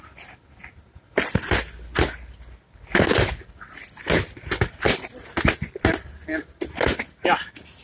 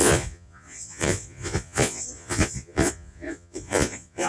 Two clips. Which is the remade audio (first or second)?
second